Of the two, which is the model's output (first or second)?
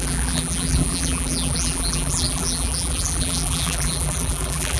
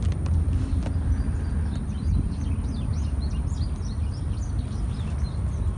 first